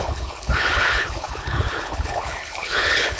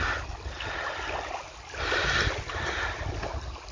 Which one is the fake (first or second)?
first